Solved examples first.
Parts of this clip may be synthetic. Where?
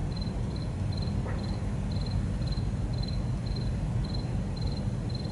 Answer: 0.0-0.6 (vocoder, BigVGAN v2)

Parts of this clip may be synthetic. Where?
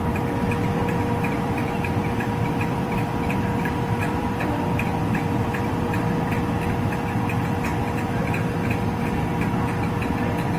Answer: 0.8-6.0 (vocoder, BigVGAN v2)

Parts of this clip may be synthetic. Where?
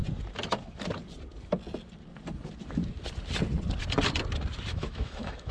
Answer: 4.7-5.5 (autoencoder, DAC-VAE)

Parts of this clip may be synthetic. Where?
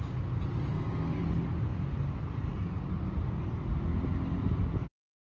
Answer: 0.7-1.2 (codec, SNAC)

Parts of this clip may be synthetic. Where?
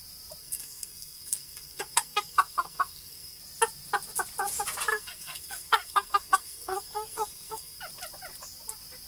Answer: 0.4-3.4 (codec, SNAC); 4.9-7.8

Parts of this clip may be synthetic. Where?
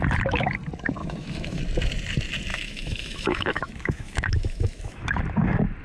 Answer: 1.0-1.6 (autoencoder, DAC-VAE); 2.5-5.2